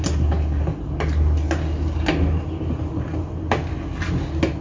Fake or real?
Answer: real